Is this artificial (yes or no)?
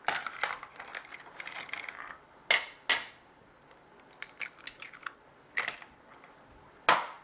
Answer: no